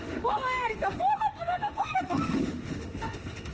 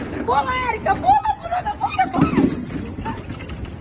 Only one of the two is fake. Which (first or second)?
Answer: first